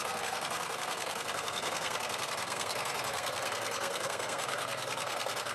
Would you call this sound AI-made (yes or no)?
yes